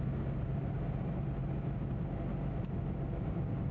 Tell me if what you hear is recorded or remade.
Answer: recorded